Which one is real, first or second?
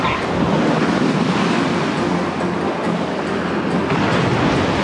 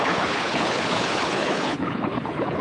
first